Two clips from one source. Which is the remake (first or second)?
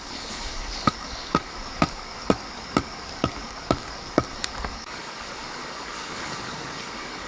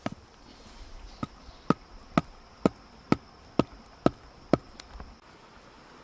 first